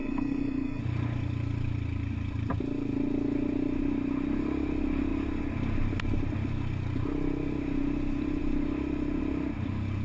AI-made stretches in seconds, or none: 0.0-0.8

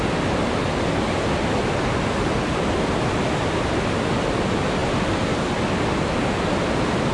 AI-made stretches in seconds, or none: none

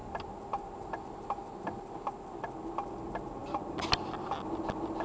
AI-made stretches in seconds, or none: none